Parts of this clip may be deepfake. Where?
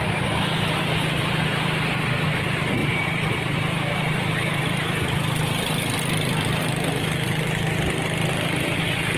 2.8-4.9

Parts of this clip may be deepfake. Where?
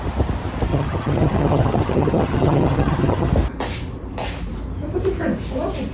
0.7-3.3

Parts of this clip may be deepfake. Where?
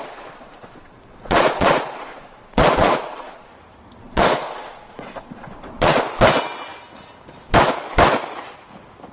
0.0-3.5; 4.0-6.1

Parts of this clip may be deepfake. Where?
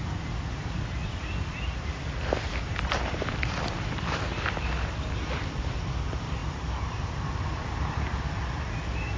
1.0-4.2; 6.4-7.9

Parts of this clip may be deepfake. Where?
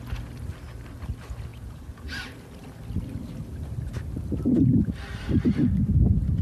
1.5-2.1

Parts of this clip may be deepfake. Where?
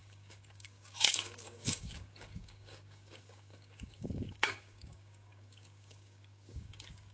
0.0-7.1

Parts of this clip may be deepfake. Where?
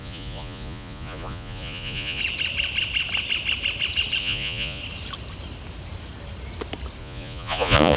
0.0-2.2; 4.2-4.8; 7.0-8.0